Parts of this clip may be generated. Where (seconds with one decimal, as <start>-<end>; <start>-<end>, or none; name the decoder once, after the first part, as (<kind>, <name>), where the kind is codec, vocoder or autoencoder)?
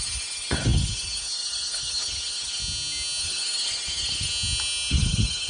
0.0-2.6 (codec, HILCodec); 3.2-4.3; 4.9-5.5